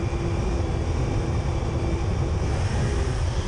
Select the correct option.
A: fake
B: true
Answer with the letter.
B